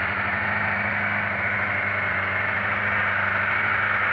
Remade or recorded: recorded